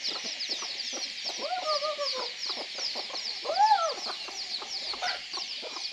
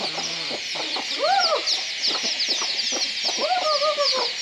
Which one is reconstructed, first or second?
first